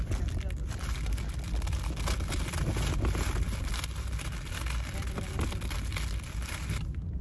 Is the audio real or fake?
real